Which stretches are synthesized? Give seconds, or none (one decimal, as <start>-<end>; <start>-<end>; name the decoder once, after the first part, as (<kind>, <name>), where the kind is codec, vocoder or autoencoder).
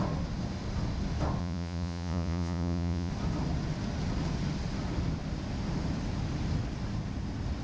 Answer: 1.4-3.1 (vocoder, Vocos)